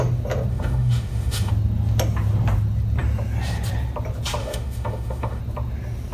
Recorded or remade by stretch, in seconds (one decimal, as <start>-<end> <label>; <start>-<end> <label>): 0.0-0.5 recorded; 0.5-1.5 remade; 1.5-4.4 recorded; 4.4-5.4 remade; 5.4-6.1 recorded